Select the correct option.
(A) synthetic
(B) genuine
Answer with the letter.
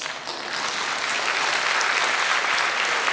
B